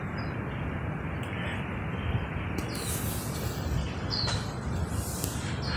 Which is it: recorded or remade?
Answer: recorded